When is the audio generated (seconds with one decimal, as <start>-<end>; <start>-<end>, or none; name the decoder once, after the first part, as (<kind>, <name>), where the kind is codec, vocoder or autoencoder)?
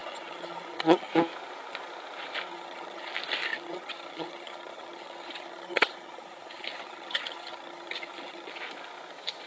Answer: 0.0-1.1 (vocoder, HiFi-GAN); 2.5-3.1; 3.5-8.5